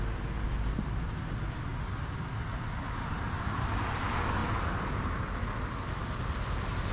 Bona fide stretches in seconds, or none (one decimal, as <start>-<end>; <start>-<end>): 0.0-6.9